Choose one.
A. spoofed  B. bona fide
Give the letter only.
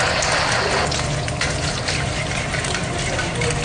B